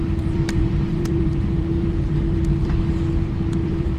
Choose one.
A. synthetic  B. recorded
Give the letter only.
A